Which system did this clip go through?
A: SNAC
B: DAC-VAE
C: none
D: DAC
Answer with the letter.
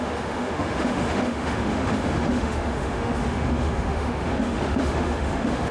B